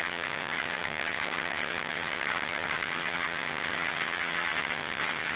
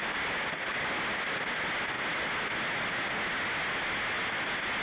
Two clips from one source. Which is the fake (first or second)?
first